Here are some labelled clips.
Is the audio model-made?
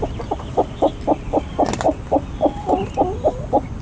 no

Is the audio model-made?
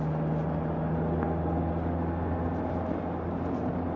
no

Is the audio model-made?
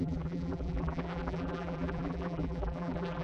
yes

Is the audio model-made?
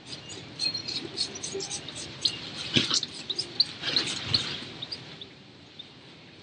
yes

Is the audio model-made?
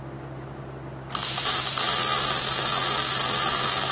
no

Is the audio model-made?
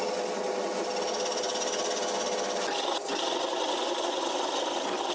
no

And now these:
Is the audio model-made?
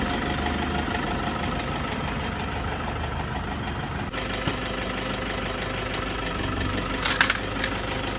no